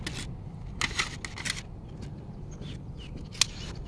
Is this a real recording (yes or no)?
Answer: yes